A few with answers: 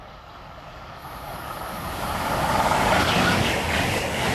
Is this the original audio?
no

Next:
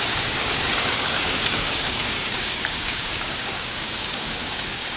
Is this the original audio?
no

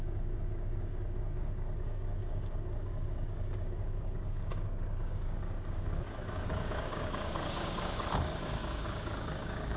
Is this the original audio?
no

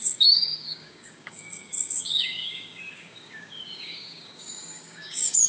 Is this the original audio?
no